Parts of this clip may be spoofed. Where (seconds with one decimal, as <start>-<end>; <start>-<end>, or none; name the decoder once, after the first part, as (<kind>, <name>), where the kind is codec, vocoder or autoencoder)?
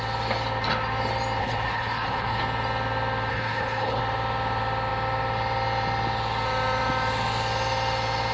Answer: 1.4-2.4 (codec, HILCodec); 3.3-4.0